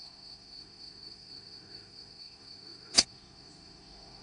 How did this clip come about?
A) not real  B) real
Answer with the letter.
A